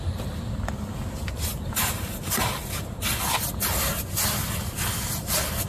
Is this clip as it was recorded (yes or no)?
yes